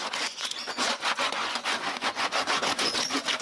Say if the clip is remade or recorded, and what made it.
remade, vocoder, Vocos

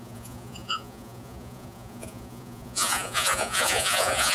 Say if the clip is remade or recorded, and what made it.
remade, vocoder, Vocos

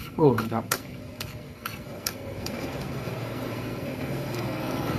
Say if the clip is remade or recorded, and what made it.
remade, codec, SNAC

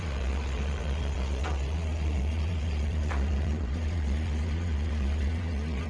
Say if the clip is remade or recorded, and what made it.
remade, vocoder, Vocos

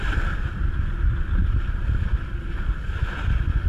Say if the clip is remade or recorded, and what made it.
recorded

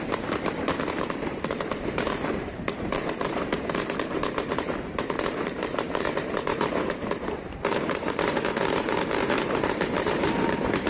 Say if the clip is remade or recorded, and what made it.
remade, vocoder, BigVGAN v2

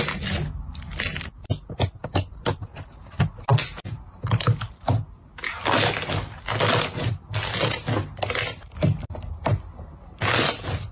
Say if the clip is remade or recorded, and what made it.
recorded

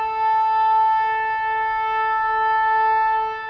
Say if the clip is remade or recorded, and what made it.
recorded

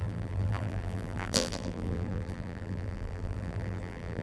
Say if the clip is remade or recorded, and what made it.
remade, vocoder, BigVGAN v2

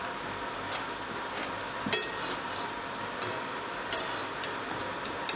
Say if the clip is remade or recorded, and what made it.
recorded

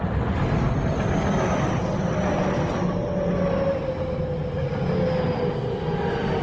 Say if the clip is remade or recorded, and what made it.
recorded